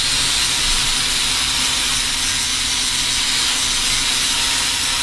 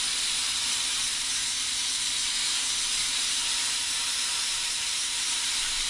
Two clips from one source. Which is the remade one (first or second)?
second